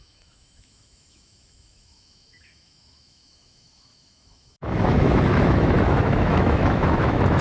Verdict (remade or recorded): remade